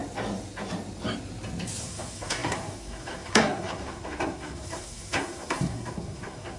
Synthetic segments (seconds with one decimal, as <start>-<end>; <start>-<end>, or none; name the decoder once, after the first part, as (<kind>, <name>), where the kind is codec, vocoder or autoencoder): 1.8-6.6 (codec, SNAC)